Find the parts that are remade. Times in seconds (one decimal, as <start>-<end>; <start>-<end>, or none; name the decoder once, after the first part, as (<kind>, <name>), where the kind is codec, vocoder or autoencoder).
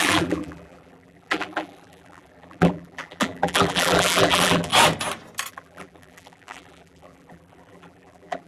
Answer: 0.0-4.7 (vocoder, BigVGAN v2); 5.5-8.5